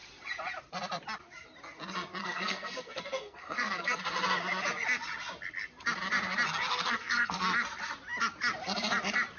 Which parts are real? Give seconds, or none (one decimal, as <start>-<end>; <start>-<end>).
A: 0.0-2.2; 4.0-6.7; 7.4-9.4